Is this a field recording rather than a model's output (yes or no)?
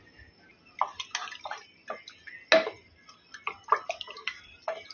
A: yes